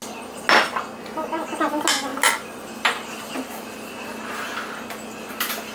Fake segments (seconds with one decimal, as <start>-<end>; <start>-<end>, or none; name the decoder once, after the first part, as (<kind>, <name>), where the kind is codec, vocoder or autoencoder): none